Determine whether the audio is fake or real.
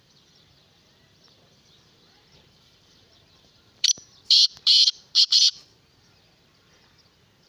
fake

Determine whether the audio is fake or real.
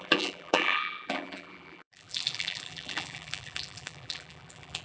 fake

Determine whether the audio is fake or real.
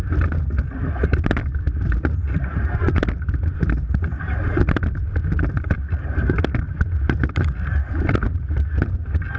fake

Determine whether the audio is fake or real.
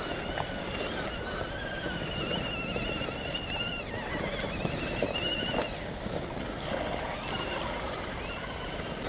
real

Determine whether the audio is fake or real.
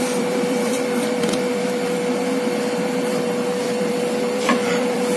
fake